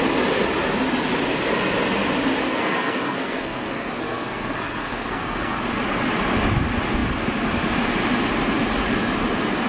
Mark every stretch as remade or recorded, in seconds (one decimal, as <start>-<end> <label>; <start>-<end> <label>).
0.0-2.4 recorded; 2.4-5.6 remade; 5.6-9.7 recorded